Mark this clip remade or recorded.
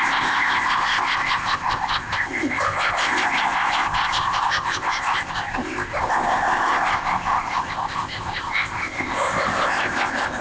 remade